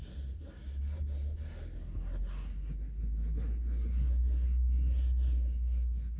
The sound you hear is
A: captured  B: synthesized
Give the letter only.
A